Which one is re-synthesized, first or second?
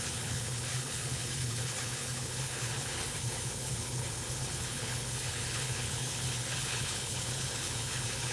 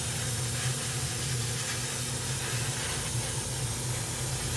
first